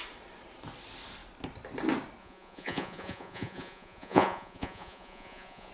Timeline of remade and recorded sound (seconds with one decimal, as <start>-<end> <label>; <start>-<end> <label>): 0.0-2.2 recorded; 2.2-5.7 remade